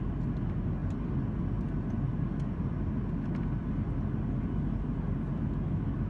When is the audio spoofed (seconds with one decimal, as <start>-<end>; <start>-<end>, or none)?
none